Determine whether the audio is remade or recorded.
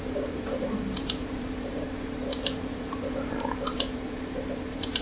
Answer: remade